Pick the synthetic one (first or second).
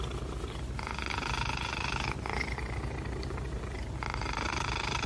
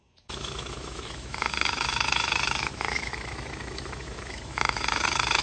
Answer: second